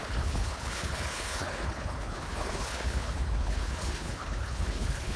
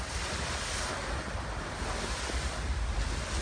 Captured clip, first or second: second